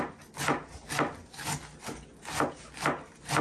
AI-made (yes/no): no